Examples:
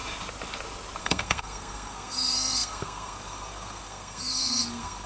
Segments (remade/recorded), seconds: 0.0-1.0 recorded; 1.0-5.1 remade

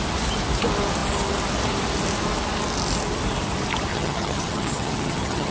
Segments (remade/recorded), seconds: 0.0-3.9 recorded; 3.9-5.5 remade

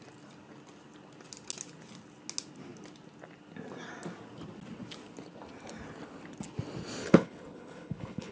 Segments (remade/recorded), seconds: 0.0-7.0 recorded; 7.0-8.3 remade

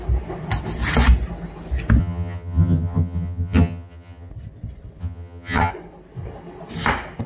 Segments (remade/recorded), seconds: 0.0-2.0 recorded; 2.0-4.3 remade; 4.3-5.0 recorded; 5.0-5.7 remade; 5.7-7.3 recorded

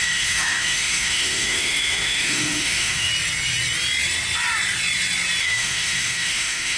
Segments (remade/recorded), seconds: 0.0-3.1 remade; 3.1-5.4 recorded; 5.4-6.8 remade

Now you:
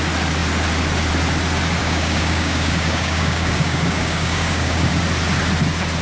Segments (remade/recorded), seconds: 0.0-1.8 recorded; 1.8-4.9 remade; 4.9-6.0 recorded

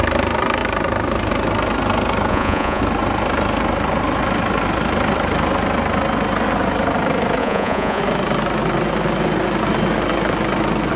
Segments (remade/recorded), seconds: 0.0-2.3 recorded; 2.3-2.8 remade; 2.8-7.4 recorded; 7.4-8.0 remade; 8.0-11.0 recorded